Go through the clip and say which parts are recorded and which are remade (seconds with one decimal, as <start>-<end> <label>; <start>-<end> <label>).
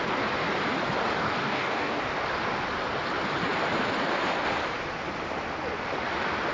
0.0-1.2 recorded; 1.2-2.0 remade; 2.0-6.5 recorded